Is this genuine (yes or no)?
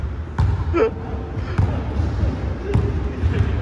yes